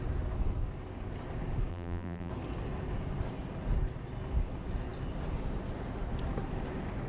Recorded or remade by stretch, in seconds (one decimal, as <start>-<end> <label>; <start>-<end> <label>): 0.0-1.7 recorded; 1.7-2.3 remade; 2.3-7.1 recorded